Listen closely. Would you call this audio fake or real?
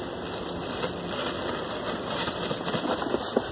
real